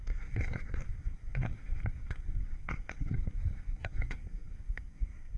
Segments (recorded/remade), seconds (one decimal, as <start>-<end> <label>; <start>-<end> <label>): 0.0-5.4 remade